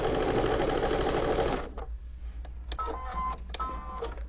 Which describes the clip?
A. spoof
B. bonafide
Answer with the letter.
B